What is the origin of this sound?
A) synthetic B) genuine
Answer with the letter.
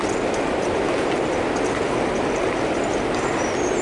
B